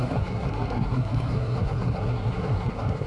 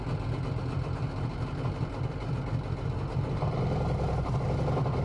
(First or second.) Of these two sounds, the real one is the second